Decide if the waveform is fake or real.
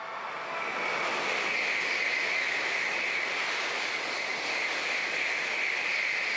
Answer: real